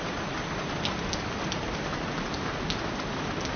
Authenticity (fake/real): real